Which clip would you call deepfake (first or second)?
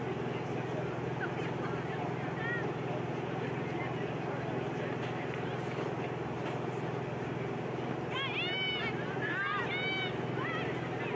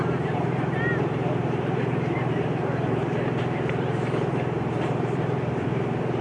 second